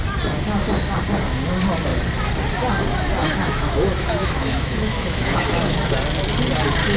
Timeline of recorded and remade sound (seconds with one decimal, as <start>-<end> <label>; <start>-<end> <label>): 0.0-3.4 recorded; 3.4-5.9 remade; 5.9-7.0 recorded